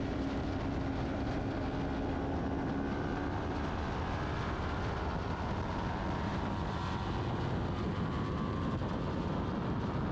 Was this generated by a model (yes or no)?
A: no